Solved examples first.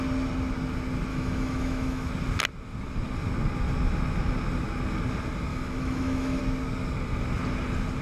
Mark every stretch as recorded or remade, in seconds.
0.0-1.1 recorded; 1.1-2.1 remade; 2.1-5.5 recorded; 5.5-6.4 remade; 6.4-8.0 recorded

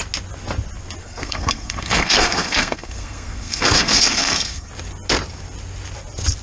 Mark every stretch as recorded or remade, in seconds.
0.0-1.0 recorded; 1.0-4.7 remade; 4.7-6.4 recorded

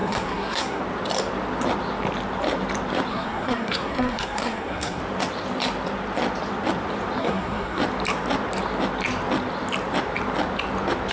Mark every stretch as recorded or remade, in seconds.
0.0-0.8 remade; 0.8-3.1 recorded; 3.1-5.0 remade; 5.0-7.2 recorded; 7.2-7.8 remade; 7.8-11.1 recorded

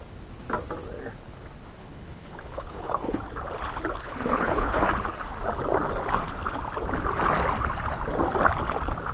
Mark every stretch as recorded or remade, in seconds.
0.0-1.8 recorded; 1.8-3.2 remade; 3.2-4.0 recorded; 4.0-4.8 remade; 4.8-9.1 recorded

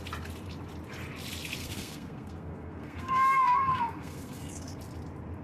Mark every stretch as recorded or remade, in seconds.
0.0-1.6 recorded; 1.6-4.8 remade; 4.8-5.4 recorded

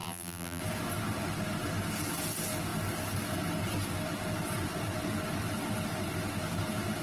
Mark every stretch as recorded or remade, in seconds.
0.0-0.6 remade; 0.6-7.0 recorded

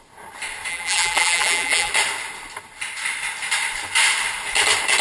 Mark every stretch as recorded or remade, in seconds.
0.0-0.7 recorded; 0.7-1.9 remade; 1.9-5.0 recorded

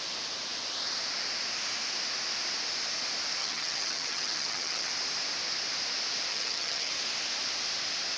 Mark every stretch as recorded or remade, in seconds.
0.0-3.4 recorded; 3.4-4.9 remade; 4.9-6.3 recorded; 6.3-6.9 remade; 6.9-8.2 recorded